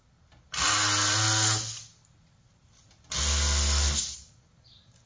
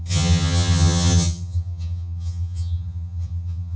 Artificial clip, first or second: second